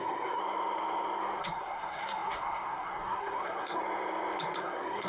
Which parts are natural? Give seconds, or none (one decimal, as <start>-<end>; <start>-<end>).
0.4-1.4; 3.8-4.6